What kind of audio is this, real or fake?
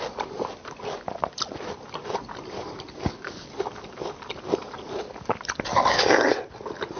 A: real